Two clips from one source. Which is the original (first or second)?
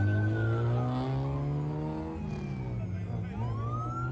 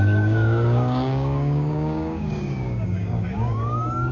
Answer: first